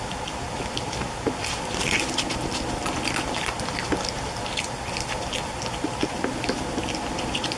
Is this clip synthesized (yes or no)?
no